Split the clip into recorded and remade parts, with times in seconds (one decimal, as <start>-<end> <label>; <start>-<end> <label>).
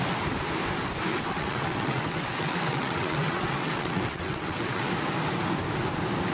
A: 0.0-1.1 recorded; 1.1-4.9 remade; 4.9-6.3 recorded